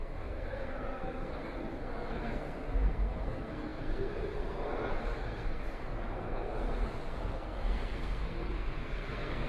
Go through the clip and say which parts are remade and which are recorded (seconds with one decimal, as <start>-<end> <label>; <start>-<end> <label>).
0.0-9.5 remade